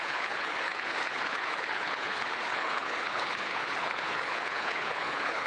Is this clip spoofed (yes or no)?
yes